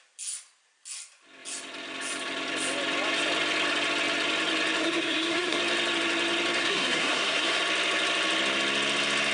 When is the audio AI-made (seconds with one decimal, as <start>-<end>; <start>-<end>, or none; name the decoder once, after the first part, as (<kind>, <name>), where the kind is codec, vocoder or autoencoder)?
4.8-5.6 (codec, SNAC); 6.6-7.6